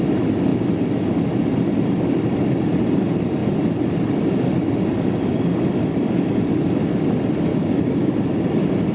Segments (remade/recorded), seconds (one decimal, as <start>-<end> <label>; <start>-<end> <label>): 0.0-7.5 recorded; 7.5-8.1 remade; 8.1-8.9 recorded